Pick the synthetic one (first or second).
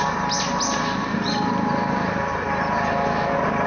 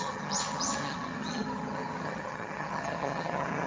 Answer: second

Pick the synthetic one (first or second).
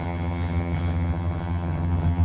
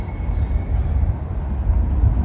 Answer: first